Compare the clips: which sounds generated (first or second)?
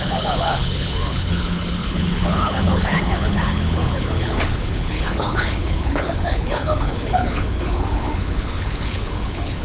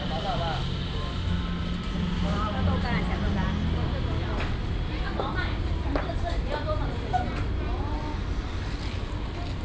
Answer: first